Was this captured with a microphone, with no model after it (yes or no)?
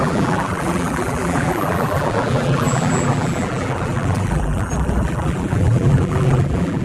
no